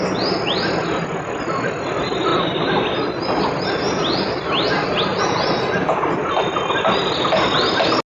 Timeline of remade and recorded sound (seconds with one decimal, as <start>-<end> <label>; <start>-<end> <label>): 0.0-2.3 recorded; 2.3-3.1 remade; 3.1-8.1 recorded